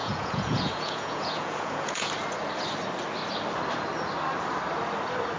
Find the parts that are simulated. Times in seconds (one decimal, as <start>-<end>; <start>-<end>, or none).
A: 0.0-2.1